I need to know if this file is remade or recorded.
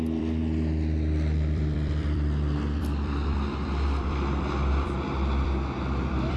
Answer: remade